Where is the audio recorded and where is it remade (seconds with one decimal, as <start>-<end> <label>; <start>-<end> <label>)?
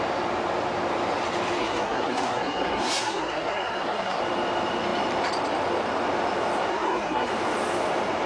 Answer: 0.0-1.6 recorded; 1.6-4.2 remade; 4.2-6.7 recorded; 6.7-7.3 remade; 7.3-8.3 recorded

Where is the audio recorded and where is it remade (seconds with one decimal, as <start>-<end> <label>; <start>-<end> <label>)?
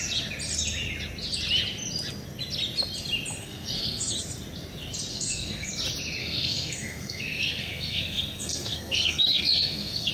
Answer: 0.0-3.4 recorded; 3.4-4.1 remade; 4.1-5.1 recorded; 5.1-5.7 remade; 5.7-6.2 recorded; 6.2-10.1 remade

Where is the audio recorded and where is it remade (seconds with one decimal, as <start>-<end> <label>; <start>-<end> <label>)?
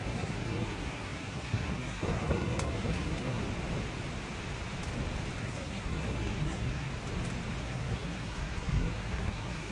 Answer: 0.0-3.4 remade; 3.4-5.4 recorded; 5.4-6.9 remade; 6.9-7.6 recorded; 7.6-9.7 remade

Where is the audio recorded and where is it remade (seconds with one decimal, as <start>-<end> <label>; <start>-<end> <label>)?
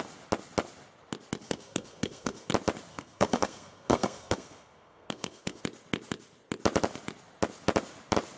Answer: 0.0-1.4 recorded; 1.4-2.5 remade; 2.5-2.9 recorded; 2.9-5.6 remade; 5.6-8.4 recorded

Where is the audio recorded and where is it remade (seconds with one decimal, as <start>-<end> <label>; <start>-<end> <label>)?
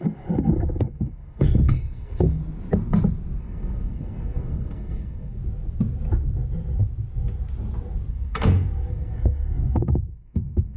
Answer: 0.0-2.4 remade; 2.4-3.4 recorded; 3.4-5.4 remade; 5.4-8.1 recorded; 8.1-10.8 remade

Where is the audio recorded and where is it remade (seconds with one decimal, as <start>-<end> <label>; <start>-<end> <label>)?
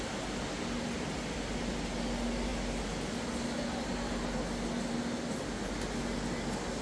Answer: 0.0-6.8 recorded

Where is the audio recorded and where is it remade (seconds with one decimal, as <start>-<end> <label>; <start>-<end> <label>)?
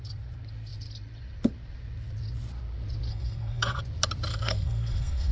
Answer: 0.0-3.1 recorded; 3.1-3.8 remade; 3.8-4.3 recorded; 4.3-5.3 remade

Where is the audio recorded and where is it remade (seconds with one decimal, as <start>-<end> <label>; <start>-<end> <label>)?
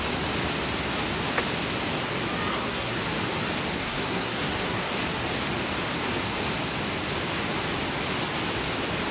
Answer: 0.0-2.5 recorded; 2.5-3.0 remade; 3.0-3.8 recorded; 3.8-4.9 remade; 4.9-9.1 recorded